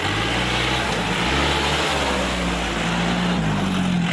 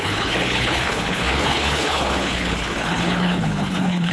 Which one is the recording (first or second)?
first